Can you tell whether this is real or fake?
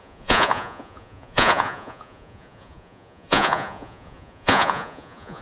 fake